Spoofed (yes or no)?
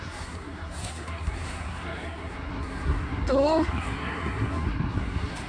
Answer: yes